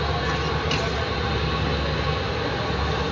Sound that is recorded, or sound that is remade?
recorded